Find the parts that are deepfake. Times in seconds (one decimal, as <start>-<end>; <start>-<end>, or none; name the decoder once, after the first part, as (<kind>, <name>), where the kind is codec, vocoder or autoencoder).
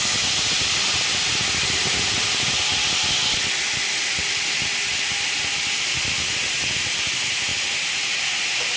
none